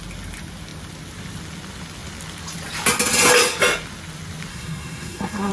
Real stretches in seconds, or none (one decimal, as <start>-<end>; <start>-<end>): 0.0-4.5